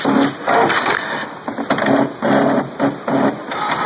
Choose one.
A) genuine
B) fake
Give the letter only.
A